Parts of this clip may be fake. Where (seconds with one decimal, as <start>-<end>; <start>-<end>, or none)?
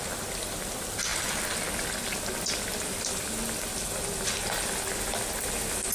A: none